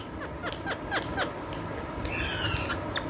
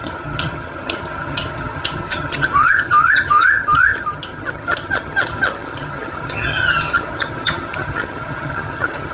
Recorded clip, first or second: first